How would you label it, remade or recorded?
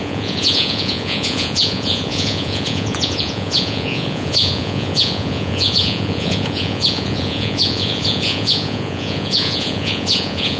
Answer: remade